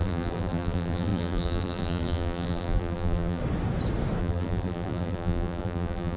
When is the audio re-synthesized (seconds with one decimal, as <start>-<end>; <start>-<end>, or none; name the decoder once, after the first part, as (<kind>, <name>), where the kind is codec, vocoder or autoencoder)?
0.0-3.4 (vocoder, BigVGAN v2); 4.2-6.2